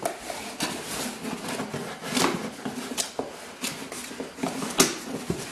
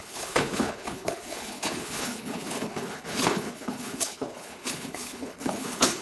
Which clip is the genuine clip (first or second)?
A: first